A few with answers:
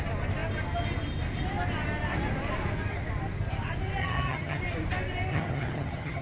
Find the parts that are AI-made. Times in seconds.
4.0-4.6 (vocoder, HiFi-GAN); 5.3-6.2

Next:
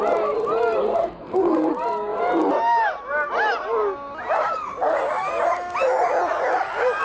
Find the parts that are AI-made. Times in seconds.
1.0-1.7 (codec, SNAC)

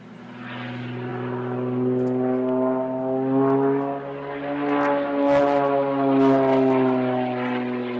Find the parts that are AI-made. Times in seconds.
none

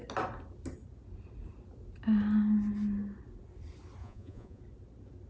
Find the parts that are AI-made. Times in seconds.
4.0-4.6 (vocoder, Vocos)

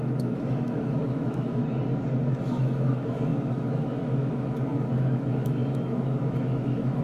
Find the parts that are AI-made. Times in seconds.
0.0-1.6 (autoencoder, DAC-VAE); 2.3-7.0